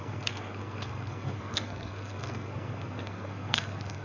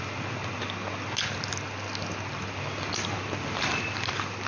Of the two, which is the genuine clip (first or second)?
second